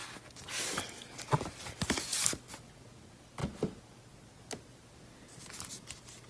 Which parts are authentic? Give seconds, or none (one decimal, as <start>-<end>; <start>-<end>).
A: 0.0-6.3